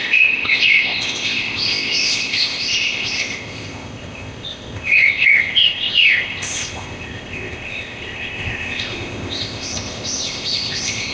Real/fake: fake